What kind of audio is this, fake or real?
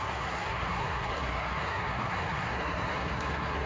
fake